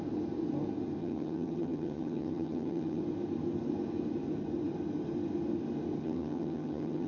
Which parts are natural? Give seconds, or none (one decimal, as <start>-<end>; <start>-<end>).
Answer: 0.0-1.0; 3.0-6.0